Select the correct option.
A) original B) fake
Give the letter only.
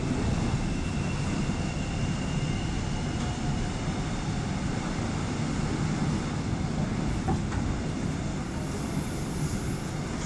A